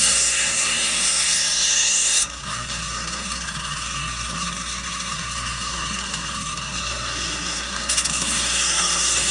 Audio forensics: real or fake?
fake